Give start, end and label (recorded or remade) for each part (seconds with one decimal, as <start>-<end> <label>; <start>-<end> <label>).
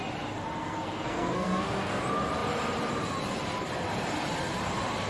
0.0-0.6 recorded; 0.6-2.0 remade; 2.0-5.1 recorded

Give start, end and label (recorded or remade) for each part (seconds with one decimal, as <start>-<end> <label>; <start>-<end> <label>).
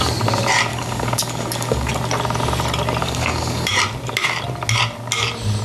0.0-0.7 recorded; 0.7-1.9 remade; 1.9-3.0 recorded; 3.0-3.7 remade; 3.7-5.6 recorded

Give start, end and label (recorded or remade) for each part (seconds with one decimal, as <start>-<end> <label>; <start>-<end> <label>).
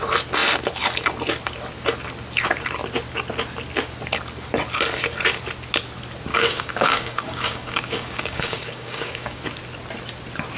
0.0-6.3 recorded; 6.3-9.4 remade; 9.4-10.6 recorded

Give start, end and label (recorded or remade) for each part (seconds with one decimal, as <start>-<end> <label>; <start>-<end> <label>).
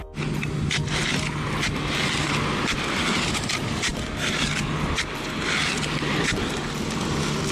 0.0-7.5 recorded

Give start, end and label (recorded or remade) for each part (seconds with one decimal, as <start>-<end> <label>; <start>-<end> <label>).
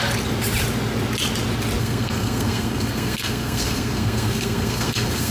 0.0-1.8 recorded; 1.8-5.3 remade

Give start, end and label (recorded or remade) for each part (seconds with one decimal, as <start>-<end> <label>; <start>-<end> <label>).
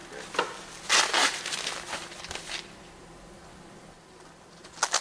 0.0-5.0 recorded